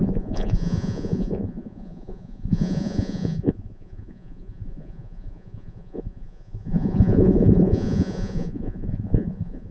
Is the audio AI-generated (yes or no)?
yes